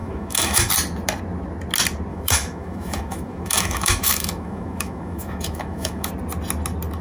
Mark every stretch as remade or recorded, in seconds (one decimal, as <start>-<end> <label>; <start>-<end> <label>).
0.0-0.7 remade; 0.7-2.1 recorded; 2.1-6.1 remade; 6.1-7.0 recorded

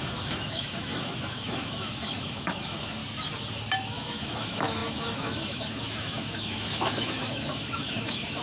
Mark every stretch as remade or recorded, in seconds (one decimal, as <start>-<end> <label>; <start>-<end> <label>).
0.0-3.0 remade; 3.0-3.7 recorded; 3.7-8.4 remade

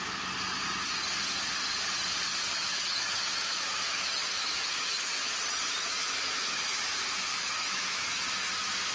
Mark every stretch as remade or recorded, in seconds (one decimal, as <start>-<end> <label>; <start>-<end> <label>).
0.0-2.5 recorded; 2.5-5.3 remade; 5.3-5.8 recorded; 5.8-6.8 remade; 6.8-7.3 recorded; 7.3-8.2 remade; 8.2-8.9 recorded

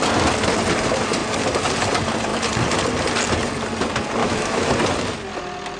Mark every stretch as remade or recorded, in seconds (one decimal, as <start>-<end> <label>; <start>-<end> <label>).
0.0-4.2 recorded; 4.2-4.7 remade; 4.7-5.8 recorded